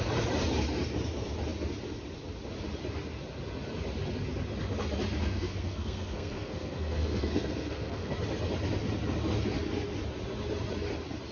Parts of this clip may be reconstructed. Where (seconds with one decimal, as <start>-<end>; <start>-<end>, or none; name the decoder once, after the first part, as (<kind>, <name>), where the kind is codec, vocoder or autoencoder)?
5.2-8.1 (codec, SNAC)